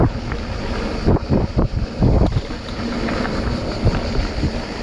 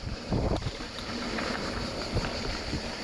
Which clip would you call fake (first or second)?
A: second